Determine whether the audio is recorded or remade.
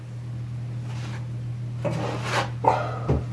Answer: recorded